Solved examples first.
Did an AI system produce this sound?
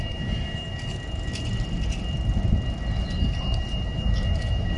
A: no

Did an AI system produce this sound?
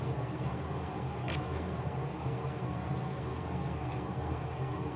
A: yes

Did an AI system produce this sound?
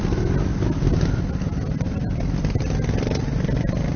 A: no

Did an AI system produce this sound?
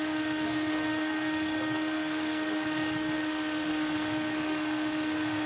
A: yes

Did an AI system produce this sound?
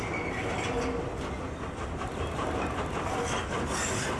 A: no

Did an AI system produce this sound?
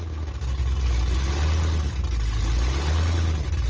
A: no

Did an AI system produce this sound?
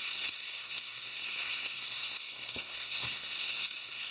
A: yes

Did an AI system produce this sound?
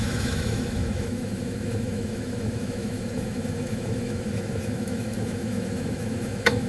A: yes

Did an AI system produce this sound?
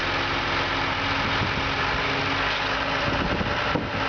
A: no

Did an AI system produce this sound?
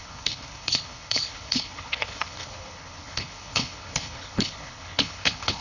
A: yes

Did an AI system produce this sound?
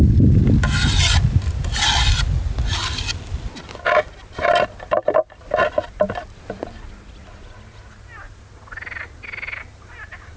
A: no